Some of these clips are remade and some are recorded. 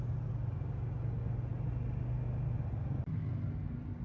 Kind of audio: recorded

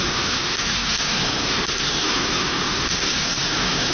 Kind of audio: remade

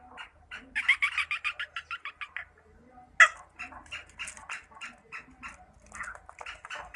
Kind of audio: recorded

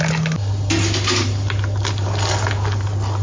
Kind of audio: recorded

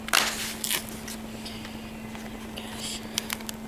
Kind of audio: recorded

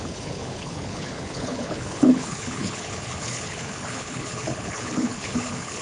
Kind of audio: remade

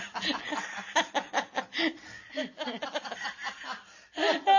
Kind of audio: recorded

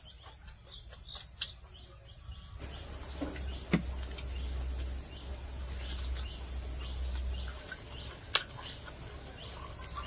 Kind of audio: recorded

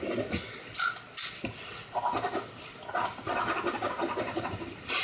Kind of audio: recorded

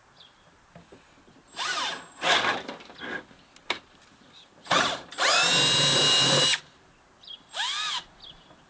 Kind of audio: recorded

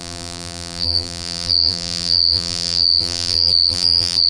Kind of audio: remade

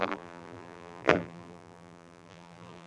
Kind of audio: remade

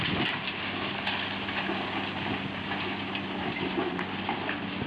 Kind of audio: recorded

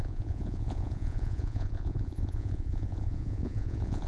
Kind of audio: remade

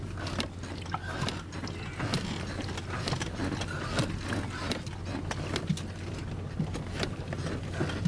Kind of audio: recorded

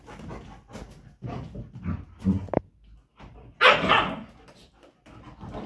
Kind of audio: recorded